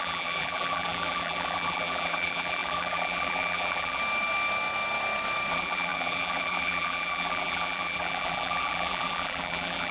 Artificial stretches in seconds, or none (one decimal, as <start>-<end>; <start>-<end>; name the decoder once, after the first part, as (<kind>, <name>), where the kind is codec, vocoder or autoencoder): 0.0-4.0 (vocoder, BigVGAN v2); 5.5-9.9